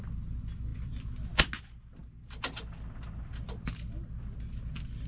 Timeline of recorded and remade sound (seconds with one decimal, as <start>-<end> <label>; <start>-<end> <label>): 0.0-5.1 recorded